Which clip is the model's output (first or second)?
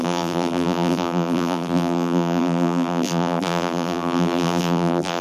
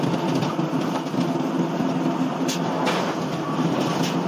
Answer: first